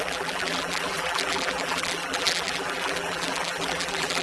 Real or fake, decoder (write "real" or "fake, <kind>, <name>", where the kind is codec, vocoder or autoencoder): fake, vocoder, BigVGAN v2